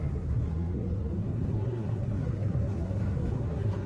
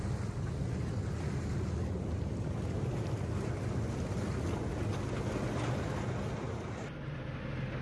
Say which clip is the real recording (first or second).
second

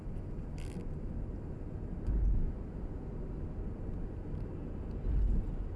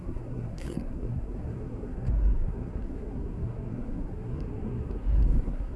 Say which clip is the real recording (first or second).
first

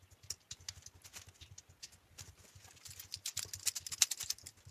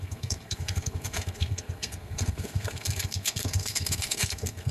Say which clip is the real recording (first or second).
first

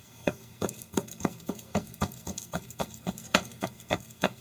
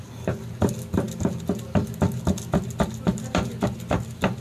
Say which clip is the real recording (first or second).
second